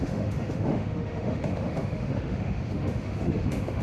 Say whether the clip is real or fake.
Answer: fake